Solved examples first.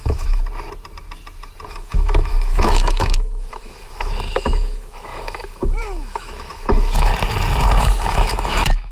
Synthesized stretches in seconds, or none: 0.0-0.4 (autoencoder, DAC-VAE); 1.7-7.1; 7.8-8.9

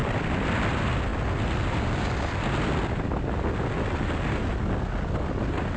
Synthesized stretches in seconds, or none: none

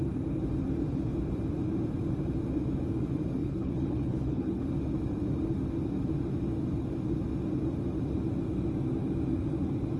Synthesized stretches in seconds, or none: 3.4-4.6 (codec, HILCodec)

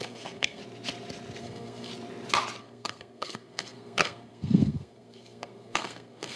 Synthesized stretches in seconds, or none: 0.0-0.6 (codec, SNAC); 1.4-1.9; 2.6-6.4

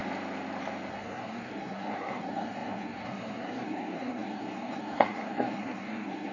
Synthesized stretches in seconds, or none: 0.9-6.3 (codec, SNAC)

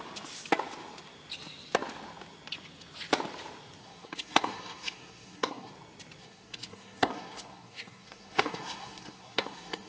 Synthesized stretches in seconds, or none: 3.8-5.7 (codec, SNAC); 6.2-9.9

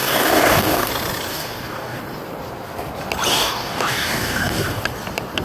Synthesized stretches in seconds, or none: 0.0-0.9 (codec, DAC); 1.3-2.0; 3.3-4.8

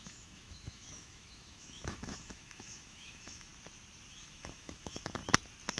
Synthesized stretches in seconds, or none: 0.0-3.5 (autoencoder, DAC-VAE); 4.1-5.2